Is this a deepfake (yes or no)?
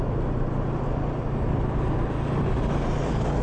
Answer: no